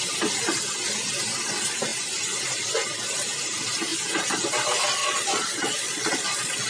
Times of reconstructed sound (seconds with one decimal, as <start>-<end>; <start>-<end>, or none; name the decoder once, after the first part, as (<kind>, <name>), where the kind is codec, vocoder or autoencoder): 5.0-6.7 (vocoder, Vocos)